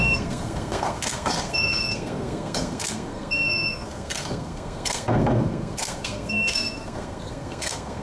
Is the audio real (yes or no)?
no